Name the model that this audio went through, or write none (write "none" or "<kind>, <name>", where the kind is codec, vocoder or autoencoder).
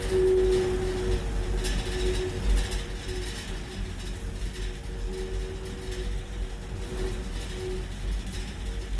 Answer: none